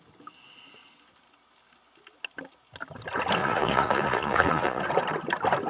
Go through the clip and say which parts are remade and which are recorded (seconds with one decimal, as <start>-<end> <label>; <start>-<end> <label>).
0.0-3.4 recorded; 3.4-4.8 remade; 4.8-5.7 recorded